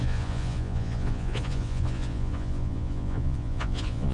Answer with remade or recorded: remade